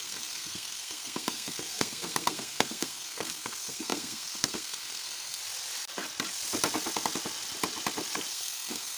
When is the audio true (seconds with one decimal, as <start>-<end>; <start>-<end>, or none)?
5.4-8.3

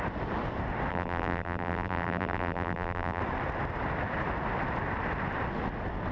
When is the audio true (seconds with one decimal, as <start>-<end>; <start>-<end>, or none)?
0.0-0.9; 3.2-6.1

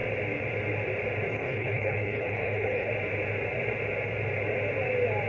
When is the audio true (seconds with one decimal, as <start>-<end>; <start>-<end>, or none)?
0.0-1.3; 2.9-5.3

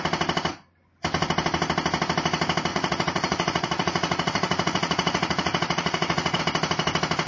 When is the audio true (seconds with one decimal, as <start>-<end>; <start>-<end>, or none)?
0.0-2.7; 6.4-7.3

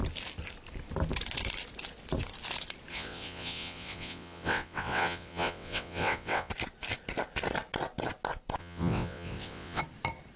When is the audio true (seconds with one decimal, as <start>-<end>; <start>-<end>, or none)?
0.0-2.9; 6.5-8.6; 9.8-10.4

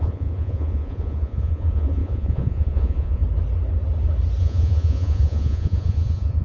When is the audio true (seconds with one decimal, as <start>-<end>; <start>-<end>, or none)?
3.2-4.4

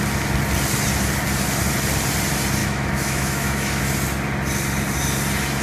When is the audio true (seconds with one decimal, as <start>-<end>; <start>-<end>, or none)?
0.0-2.6; 3.8-5.6